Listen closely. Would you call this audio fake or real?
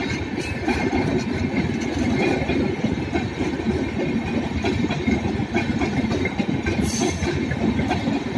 real